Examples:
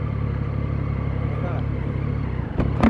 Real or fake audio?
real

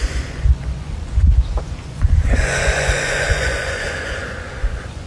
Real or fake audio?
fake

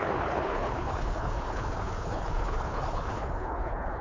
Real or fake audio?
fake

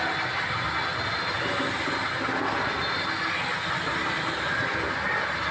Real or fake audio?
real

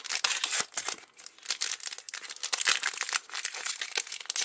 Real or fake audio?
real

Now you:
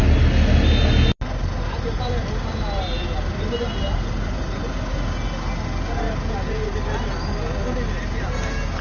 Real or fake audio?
real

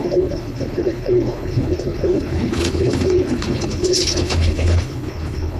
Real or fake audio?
fake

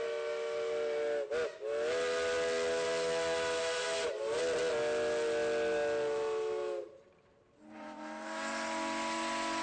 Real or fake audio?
real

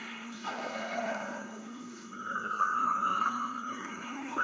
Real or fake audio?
fake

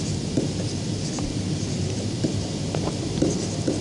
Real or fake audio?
real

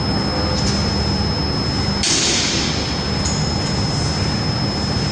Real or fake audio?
real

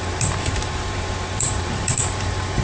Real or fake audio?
fake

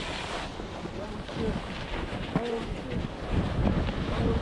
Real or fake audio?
real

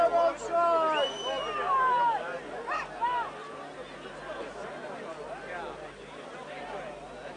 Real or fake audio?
real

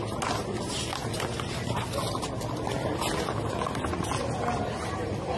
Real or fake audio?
real